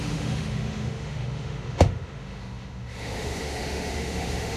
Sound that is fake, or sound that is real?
fake